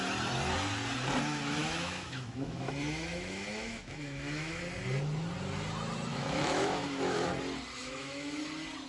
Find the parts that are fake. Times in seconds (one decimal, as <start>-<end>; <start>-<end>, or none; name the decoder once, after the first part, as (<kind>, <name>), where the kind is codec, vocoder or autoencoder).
1.6-4.6 (autoencoder, DAC-VAE); 6.1-7.3; 7.8-8.4